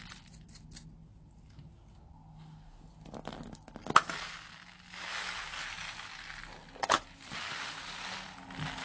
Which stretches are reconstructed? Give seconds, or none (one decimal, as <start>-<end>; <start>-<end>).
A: none